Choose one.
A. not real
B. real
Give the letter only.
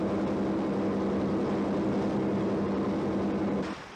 B